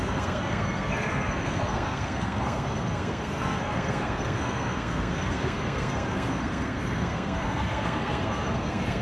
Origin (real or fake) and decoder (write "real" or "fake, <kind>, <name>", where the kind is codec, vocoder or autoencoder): fake, codec, SNAC